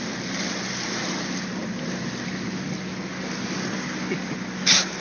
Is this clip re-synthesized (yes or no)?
no